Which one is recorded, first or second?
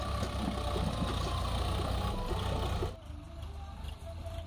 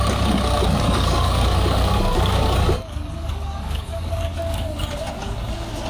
first